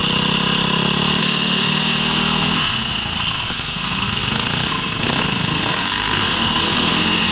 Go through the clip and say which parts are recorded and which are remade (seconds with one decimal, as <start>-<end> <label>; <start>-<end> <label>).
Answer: 0.0-1.2 recorded; 1.2-7.3 remade